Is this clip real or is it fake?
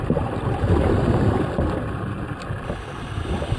real